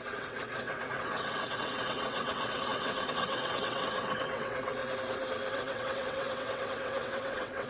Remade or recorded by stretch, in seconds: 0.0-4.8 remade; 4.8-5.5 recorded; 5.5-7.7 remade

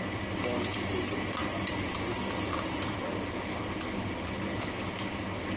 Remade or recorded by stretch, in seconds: 0.0-5.6 recorded

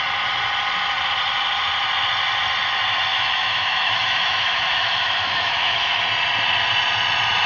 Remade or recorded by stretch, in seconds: 0.0-3.1 recorded; 3.1-6.0 remade; 6.0-7.5 recorded

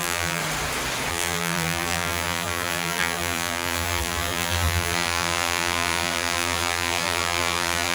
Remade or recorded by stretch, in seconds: 0.0-0.4 remade; 0.4-1.1 recorded; 1.1-7.9 remade

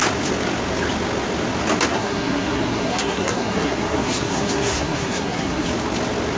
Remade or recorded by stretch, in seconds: 0.0-1.9 recorded; 1.9-5.7 remade; 5.7-6.4 recorded

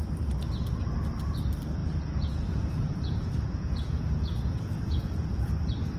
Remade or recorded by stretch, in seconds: 0.0-1.8 recorded; 1.8-5.4 remade; 5.4-6.0 recorded